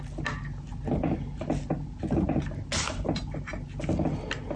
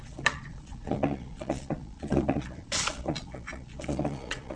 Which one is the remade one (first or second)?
second